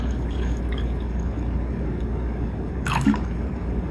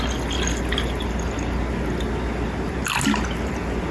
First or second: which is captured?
second